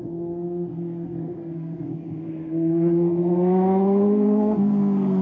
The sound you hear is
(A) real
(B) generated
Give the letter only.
B